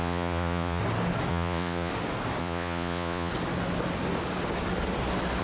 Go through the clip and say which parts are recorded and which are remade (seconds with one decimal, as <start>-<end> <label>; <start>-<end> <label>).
0.0-0.8 remade; 0.8-1.3 recorded; 1.3-1.9 remade; 1.9-2.4 recorded; 2.4-3.3 remade; 3.3-5.4 recorded